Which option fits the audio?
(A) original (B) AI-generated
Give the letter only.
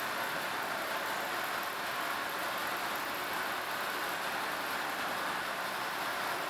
A